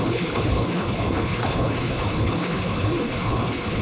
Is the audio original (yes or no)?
no